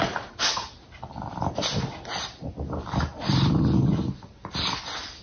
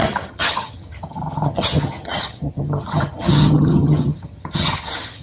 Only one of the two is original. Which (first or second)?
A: first